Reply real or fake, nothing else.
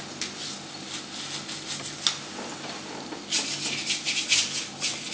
real